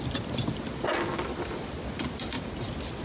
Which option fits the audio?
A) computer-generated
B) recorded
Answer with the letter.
B